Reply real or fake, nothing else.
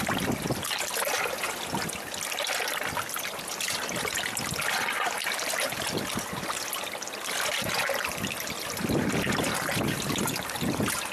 real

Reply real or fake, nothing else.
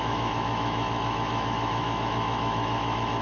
fake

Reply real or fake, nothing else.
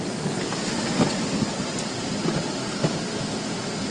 real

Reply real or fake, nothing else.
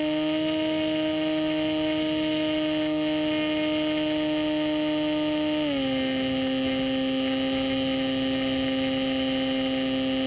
real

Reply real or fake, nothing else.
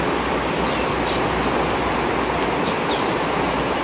real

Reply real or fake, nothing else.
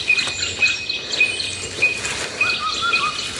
real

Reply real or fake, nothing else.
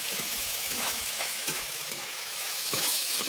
fake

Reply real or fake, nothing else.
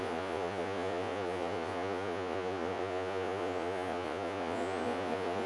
fake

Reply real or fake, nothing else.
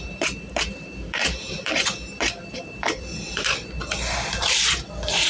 fake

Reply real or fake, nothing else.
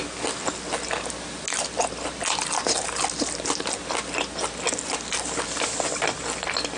real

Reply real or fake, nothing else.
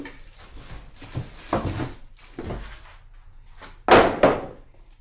real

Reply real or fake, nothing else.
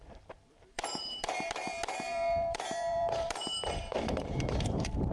fake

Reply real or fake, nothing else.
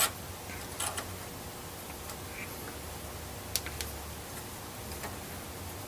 real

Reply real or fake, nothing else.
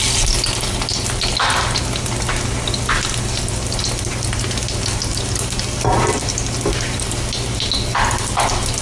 real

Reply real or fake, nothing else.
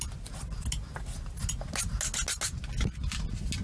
real